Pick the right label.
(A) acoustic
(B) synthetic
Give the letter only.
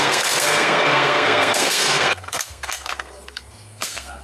B